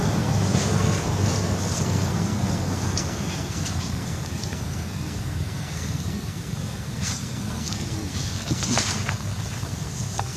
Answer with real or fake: fake